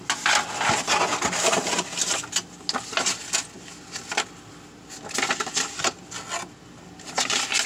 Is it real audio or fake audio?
real